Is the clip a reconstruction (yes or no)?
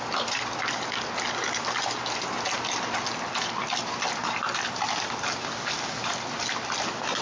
no